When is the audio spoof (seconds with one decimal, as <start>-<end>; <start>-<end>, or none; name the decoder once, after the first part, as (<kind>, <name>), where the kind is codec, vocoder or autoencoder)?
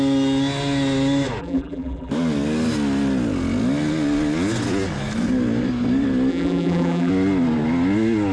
1.4-2.1 (vocoder, BigVGAN v2); 6.3-7.1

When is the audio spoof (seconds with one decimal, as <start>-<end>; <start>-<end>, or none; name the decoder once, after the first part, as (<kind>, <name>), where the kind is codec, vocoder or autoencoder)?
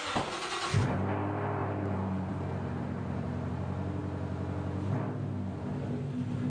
1.6-3.5 (vocoder, BigVGAN v2)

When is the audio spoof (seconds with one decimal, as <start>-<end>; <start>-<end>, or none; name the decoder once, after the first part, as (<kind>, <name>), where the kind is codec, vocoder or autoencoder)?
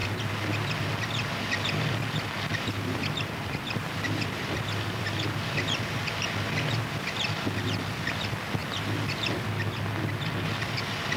2.5-6.0 (vocoder, BigVGAN v2)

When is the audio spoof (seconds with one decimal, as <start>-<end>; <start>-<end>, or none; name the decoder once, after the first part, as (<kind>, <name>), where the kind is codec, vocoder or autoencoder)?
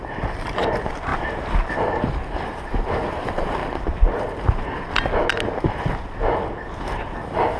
none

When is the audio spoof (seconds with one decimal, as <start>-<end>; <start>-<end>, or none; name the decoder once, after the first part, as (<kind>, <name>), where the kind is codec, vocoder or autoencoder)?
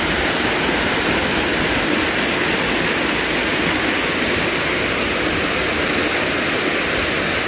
none